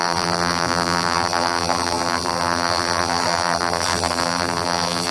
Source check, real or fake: fake